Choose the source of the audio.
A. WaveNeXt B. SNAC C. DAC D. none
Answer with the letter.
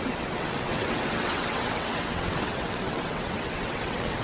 A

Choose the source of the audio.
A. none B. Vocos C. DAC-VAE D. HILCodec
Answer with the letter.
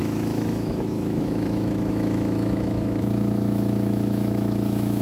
C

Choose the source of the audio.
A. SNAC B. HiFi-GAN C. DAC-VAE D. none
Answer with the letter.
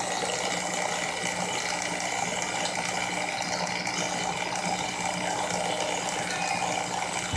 D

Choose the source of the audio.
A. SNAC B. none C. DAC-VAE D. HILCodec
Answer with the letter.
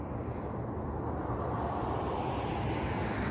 B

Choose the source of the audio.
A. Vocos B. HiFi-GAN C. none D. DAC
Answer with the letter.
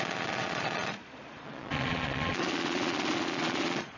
A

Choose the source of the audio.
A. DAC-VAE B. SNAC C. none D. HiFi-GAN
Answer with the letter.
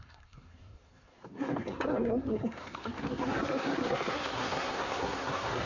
B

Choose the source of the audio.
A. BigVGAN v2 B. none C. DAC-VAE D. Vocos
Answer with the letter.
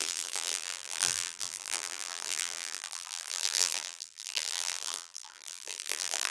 A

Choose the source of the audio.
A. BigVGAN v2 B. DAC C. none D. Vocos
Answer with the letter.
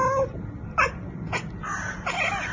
C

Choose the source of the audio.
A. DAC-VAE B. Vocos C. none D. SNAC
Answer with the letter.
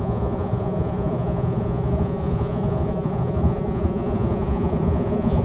B